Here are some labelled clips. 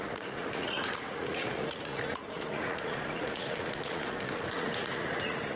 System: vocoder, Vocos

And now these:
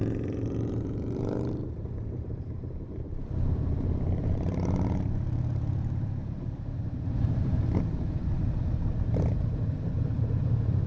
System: vocoder, BigVGAN v2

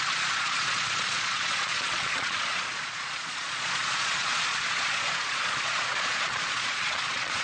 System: vocoder, Vocos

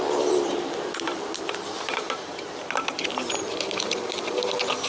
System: vocoder, BigVGAN v2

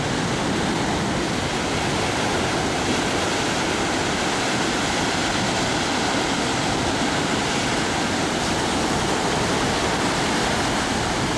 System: none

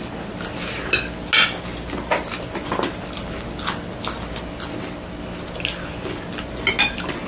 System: none